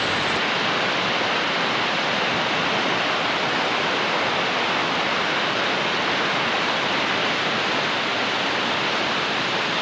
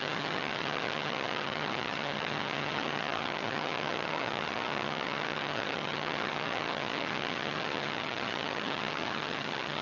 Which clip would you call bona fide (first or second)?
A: first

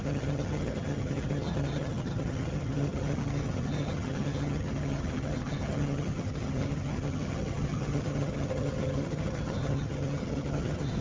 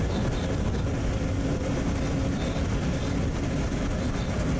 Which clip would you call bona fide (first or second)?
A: second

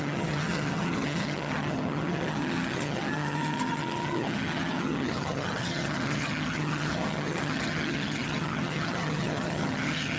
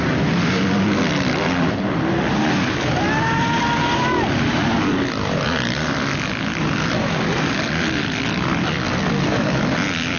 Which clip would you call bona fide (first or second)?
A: second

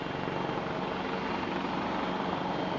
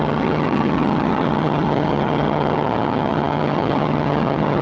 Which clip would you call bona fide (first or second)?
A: first